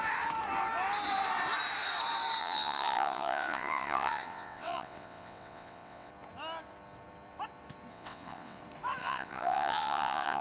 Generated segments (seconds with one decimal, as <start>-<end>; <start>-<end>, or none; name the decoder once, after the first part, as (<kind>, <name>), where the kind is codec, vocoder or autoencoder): 2.4-6.1 (vocoder, WaveNeXt); 7.9-8.6; 9.0-10.4

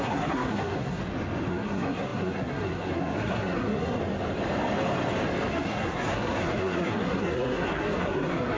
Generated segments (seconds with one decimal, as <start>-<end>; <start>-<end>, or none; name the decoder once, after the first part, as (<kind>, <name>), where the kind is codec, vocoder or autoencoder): 0.0-1.0 (codec, SNAC); 1.5-4.0; 5.5-8.6